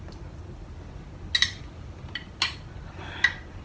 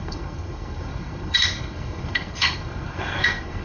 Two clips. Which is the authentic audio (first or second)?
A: first